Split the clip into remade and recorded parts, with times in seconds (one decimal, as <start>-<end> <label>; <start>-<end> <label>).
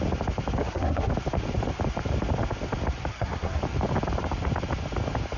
0.0-0.6 recorded; 0.6-1.1 remade; 1.1-3.1 recorded; 3.1-3.6 remade; 3.6-5.4 recorded